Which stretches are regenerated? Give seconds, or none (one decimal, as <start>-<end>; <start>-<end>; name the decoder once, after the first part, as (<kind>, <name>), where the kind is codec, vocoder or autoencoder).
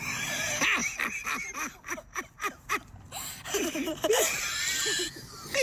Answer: none